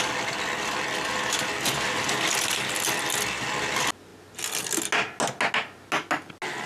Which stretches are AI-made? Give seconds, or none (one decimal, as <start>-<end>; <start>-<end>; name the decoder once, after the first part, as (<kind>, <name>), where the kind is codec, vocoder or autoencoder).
none